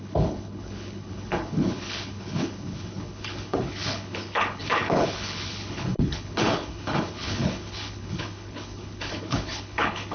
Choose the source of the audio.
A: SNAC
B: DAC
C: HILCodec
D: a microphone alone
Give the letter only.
C